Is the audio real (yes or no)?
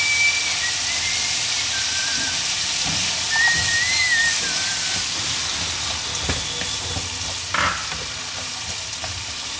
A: yes